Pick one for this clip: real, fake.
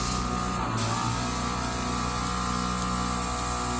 real